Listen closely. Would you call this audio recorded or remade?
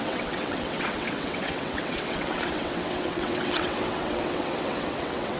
remade